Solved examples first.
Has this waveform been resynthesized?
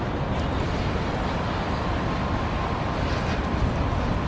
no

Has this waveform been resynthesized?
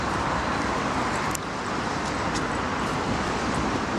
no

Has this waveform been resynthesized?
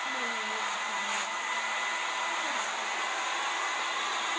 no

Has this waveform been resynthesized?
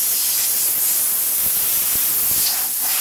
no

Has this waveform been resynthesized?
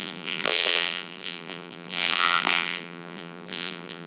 yes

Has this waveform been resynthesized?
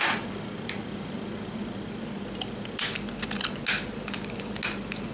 no